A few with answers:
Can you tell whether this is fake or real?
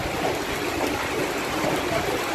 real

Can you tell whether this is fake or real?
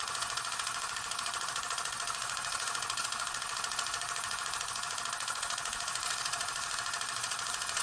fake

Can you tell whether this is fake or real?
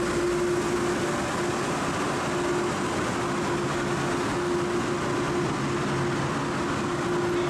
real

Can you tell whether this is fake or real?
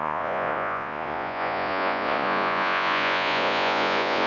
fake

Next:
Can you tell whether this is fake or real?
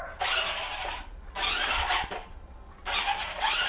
real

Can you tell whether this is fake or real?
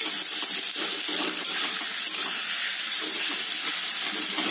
real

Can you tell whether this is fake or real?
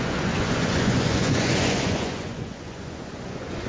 fake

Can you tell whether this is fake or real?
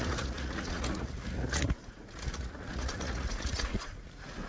fake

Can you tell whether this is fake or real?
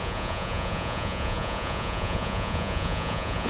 fake